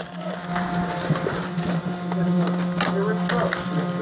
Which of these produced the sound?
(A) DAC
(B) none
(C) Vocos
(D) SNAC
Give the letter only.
B